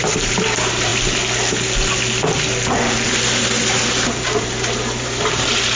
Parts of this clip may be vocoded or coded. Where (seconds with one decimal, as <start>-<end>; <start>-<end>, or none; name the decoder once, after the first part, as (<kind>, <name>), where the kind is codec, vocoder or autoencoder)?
0.0-0.9 (vocoder, BigVGAN v2); 4.4-5.8